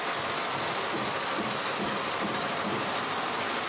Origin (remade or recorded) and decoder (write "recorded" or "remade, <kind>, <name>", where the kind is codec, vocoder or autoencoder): recorded